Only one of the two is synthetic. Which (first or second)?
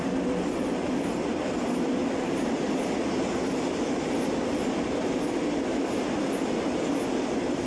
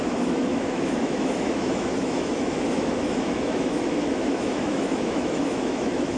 second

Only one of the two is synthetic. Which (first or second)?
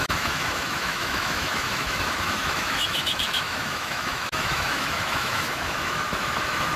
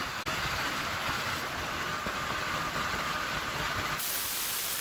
first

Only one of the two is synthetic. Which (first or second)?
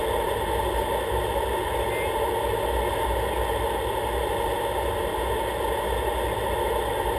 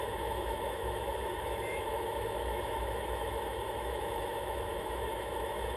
second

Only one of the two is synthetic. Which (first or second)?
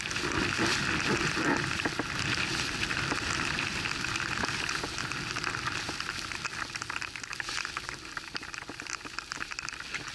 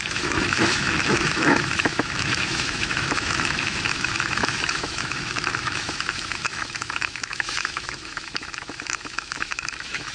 second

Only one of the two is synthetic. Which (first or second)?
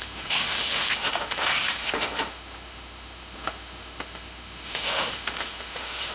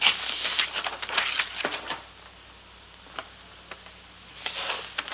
first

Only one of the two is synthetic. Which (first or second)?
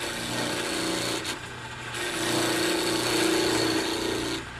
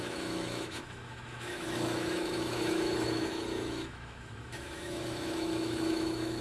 second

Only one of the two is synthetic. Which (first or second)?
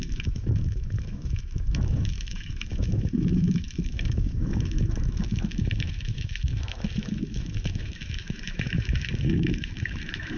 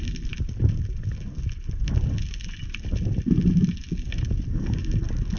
first